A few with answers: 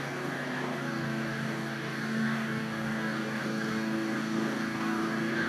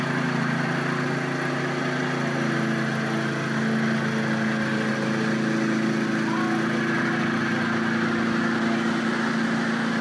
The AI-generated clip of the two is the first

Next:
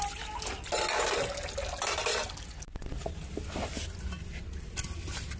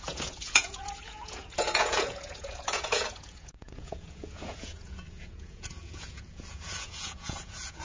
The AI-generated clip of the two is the second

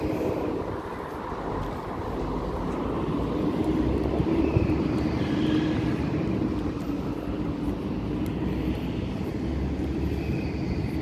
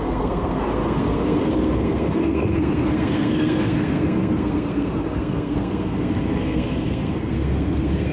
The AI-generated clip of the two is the second